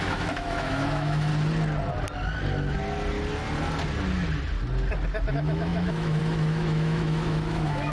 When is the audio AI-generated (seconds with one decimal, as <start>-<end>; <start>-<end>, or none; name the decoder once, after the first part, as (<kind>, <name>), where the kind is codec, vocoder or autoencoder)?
0.0-1.3 (autoencoder, DAC-VAE); 5.3-7.9